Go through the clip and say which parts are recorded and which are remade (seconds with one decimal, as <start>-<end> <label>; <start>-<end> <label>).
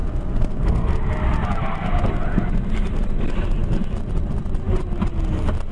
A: 0.0-0.9 remade; 0.9-5.7 recorded